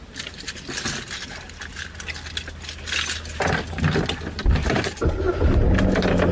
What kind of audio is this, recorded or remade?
recorded